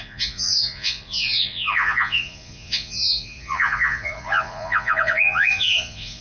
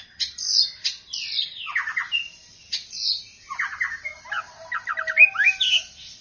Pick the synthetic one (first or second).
first